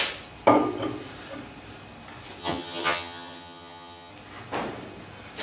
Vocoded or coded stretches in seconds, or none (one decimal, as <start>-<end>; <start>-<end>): 2.4-4.1